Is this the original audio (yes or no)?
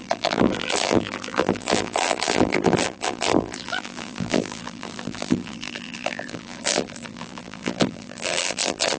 no